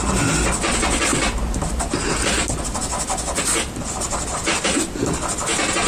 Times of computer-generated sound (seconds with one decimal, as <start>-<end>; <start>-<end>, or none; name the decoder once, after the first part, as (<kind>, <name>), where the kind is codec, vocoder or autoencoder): none